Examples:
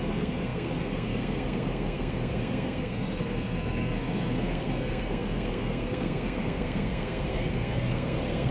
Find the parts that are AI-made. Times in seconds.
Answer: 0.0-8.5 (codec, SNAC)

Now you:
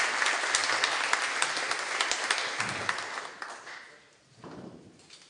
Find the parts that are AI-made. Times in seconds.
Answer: none

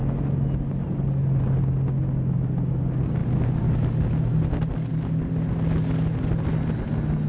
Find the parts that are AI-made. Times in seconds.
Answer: none

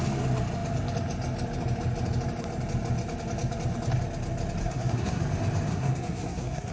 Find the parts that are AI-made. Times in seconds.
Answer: 4.6-5.2 (codec, SNAC); 5.7-6.7